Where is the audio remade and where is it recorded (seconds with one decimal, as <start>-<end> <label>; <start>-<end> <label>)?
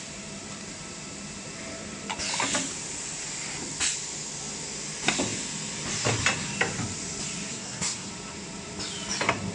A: 0.0-7.5 recorded; 7.5-8.1 remade; 8.1-9.5 recorded